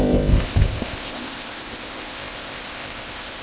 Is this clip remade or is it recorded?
remade